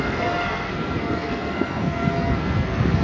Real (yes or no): no